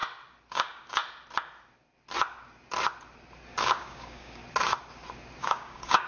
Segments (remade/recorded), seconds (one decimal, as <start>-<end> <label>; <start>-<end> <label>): 0.0-0.5 recorded; 0.5-1.0 remade; 1.0-3.6 recorded; 3.6-4.4 remade; 4.4-5.4 recorded; 5.4-6.1 remade

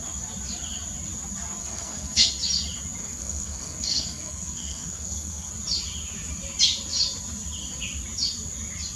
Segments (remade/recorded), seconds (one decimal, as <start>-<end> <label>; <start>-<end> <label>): 0.0-1.6 recorded; 1.6-2.3 remade; 2.3-3.0 recorded; 3.0-5.5 remade; 5.5-9.0 recorded

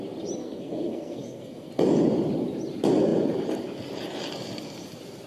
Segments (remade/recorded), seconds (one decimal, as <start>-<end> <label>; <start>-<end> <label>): 0.0-0.4 recorded; 0.4-1.7 remade; 1.7-5.3 recorded

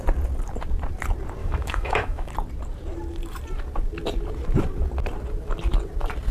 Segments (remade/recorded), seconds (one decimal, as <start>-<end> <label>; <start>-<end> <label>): 0.0-1.4 recorded; 1.4-2.3 remade; 2.3-6.3 recorded

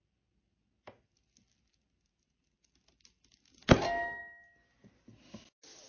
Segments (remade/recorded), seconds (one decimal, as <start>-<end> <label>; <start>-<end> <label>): 0.0-5.9 recorded

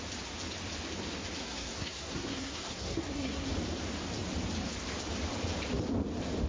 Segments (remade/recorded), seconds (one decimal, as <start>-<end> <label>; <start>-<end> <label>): 0.0-1.4 recorded; 1.4-3.5 remade; 3.5-6.5 recorded

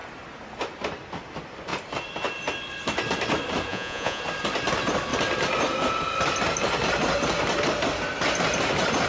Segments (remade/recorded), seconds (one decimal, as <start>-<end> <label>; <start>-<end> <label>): 0.0-3.7 recorded; 3.7-4.2 remade; 4.2-9.1 recorded